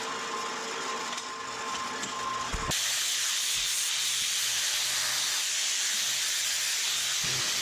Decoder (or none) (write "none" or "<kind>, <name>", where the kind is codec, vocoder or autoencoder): none